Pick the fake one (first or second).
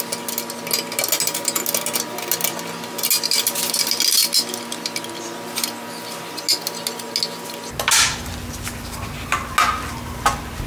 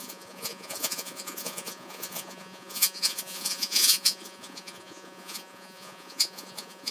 second